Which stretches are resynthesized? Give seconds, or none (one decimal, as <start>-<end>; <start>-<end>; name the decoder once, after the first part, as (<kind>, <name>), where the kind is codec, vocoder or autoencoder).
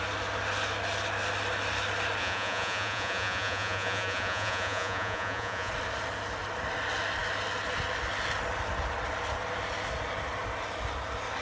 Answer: 2.2-5.7 (vocoder, Vocos)